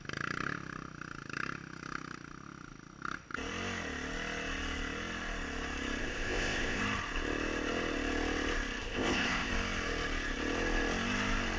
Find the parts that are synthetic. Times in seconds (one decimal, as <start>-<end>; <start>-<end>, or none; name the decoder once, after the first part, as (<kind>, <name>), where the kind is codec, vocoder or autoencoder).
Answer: 6.0-6.8 (codec, ZipCodec); 8.8-9.5